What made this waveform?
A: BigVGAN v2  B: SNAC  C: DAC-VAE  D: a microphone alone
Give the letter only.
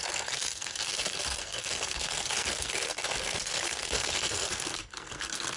B